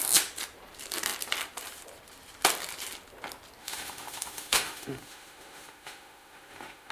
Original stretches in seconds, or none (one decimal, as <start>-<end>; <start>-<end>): 0.0-3.6

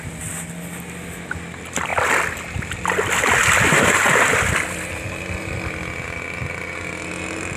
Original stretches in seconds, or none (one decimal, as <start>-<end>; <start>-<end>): 0.0-7.6

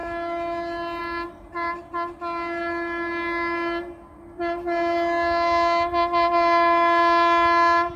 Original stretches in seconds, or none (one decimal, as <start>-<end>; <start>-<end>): 0.0-8.0